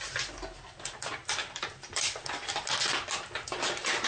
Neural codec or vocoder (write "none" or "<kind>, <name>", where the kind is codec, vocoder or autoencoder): none